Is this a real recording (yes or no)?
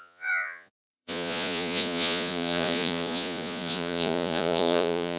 no